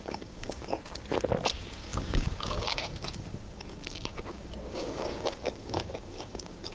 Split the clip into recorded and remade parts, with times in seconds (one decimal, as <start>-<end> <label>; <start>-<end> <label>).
0.0-0.7 remade; 0.7-1.5 recorded; 1.5-6.7 remade